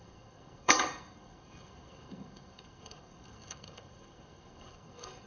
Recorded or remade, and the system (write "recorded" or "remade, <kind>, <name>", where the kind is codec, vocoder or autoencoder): remade, codec, SNAC